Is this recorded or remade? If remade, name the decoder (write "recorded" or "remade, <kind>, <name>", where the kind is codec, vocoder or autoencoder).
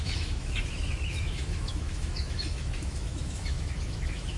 remade, autoencoder, DAC-VAE